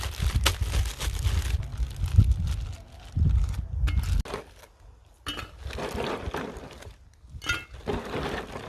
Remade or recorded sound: recorded